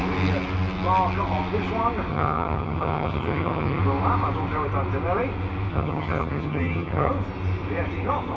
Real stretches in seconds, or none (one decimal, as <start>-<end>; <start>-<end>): 0.0-2.1; 3.8-5.7; 7.1-8.4